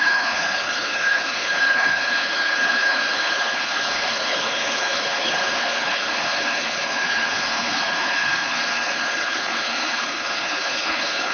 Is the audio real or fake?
fake